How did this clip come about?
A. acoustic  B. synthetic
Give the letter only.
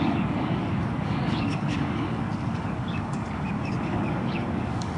B